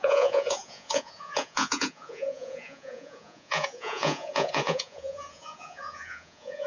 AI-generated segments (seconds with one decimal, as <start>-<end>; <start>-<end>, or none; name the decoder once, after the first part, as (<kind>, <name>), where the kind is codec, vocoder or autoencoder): 0.0-6.7 (vocoder, Vocos)